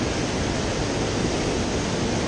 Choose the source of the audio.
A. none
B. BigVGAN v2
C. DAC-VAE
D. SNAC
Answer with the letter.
A